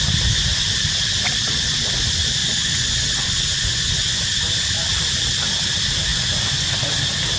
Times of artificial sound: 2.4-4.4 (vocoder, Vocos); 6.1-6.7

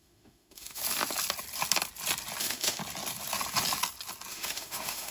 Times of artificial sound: 0.0-0.8 (autoencoder, DAC-VAE); 2.4-2.8; 4.3-5.1

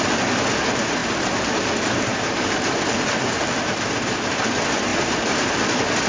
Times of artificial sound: 4.9-5.5 (vocoder, BigVGAN v2)

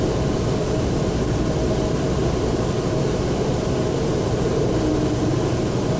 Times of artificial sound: 0.6-4.2 (vocoder, BigVGAN v2)

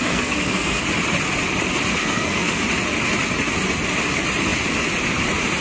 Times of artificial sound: 0.0-0.8 (codec, SNAC); 2.0-2.6